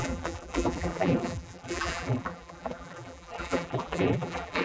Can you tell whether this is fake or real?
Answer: fake